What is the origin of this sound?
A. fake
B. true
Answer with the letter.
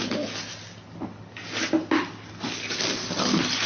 B